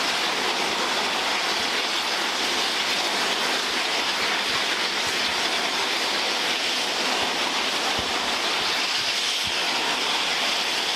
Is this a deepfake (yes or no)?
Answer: no